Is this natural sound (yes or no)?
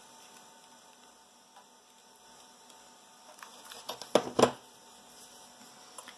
yes